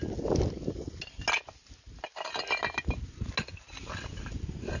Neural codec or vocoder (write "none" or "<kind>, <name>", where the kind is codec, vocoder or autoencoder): none